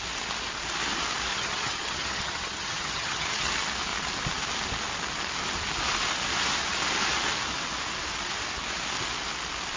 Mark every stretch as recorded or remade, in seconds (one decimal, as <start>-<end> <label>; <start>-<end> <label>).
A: 0.0-1.3 recorded; 1.3-3.5 remade; 3.5-9.8 recorded